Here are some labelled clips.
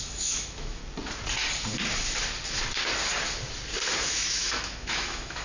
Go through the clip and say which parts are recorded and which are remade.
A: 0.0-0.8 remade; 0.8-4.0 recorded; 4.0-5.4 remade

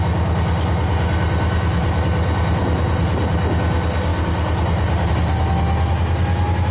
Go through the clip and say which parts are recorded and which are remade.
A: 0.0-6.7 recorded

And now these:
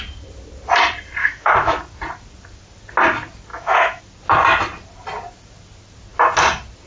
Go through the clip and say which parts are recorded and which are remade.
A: 0.0-1.2 recorded; 1.2-1.8 remade; 1.8-3.5 recorded; 3.5-4.0 remade; 4.0-6.9 recorded

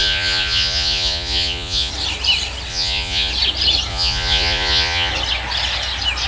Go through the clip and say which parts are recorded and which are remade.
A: 0.0-1.9 remade; 1.9-2.7 recorded; 2.7-3.3 remade; 3.3-3.9 recorded; 3.9-5.1 remade; 5.1-6.3 recorded